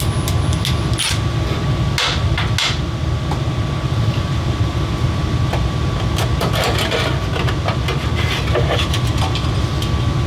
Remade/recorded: recorded